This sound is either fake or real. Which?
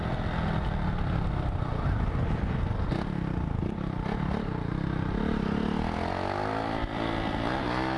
real